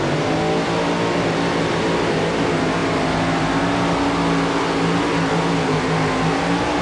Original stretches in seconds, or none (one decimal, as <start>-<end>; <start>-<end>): 0.0-6.8